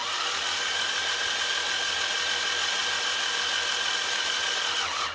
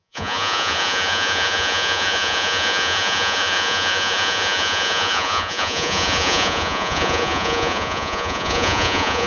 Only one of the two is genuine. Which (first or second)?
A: first